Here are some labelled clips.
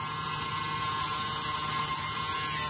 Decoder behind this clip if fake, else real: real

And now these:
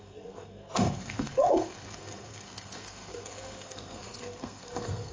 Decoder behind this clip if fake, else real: fake, codec, SNAC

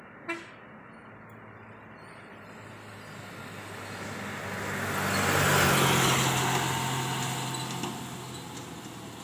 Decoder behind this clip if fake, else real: real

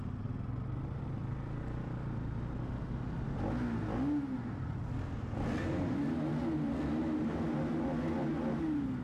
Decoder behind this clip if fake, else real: real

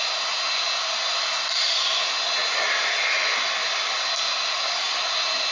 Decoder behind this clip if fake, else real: real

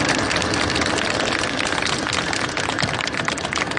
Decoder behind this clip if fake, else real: real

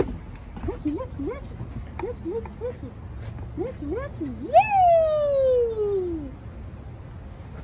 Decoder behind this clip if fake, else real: real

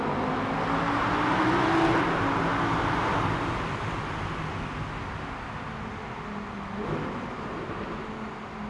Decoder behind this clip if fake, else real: real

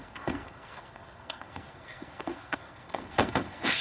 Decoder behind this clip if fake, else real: fake, codec, SNAC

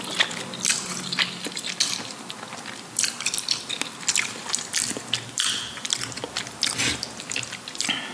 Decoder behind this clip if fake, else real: real